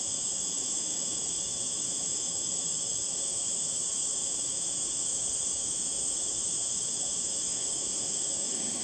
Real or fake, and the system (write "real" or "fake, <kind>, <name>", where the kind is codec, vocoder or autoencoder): fake, autoencoder, DAC-VAE